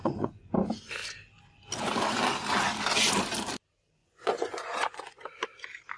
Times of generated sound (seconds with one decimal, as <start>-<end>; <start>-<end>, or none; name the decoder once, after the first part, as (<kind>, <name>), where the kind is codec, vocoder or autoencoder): 0.0-0.5 (vocoder, Vocos); 4.0-5.2